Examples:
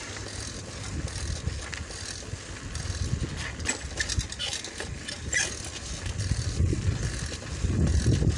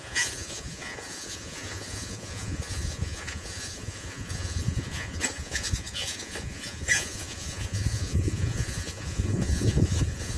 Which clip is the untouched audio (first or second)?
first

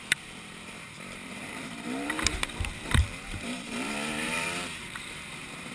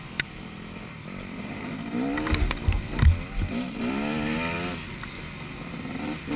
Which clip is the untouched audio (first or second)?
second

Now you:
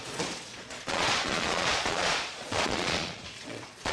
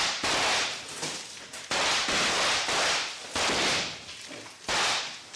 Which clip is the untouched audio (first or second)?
second